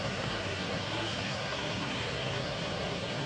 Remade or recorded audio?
remade